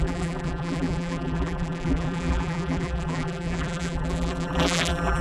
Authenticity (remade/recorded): remade